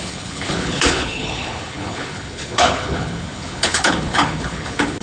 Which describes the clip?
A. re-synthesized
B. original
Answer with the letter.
A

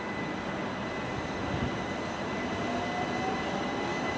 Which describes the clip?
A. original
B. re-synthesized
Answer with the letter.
A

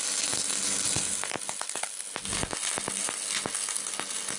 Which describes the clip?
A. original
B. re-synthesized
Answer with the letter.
A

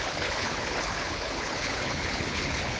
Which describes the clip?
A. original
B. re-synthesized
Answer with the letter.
B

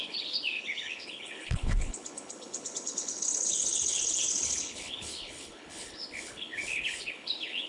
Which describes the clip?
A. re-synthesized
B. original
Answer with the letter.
A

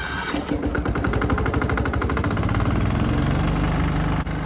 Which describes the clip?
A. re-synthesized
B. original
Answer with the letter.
B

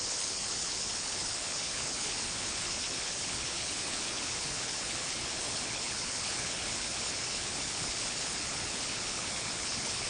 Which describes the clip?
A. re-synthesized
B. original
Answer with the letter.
A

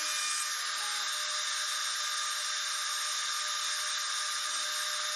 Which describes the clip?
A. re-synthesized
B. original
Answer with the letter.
B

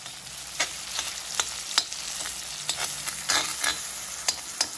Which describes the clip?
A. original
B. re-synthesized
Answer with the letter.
A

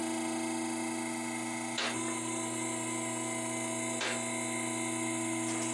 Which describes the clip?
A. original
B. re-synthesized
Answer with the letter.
A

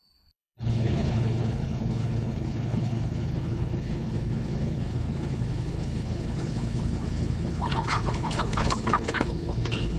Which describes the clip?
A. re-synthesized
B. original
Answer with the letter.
A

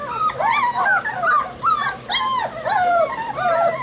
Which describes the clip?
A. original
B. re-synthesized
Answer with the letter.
A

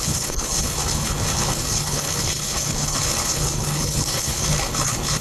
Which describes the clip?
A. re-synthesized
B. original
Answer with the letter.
A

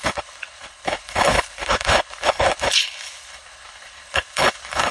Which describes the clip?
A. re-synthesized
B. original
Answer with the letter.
A